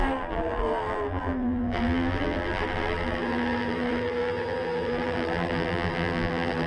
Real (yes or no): no